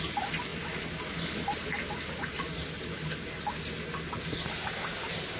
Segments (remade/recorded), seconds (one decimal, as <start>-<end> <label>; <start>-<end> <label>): 0.0-5.4 recorded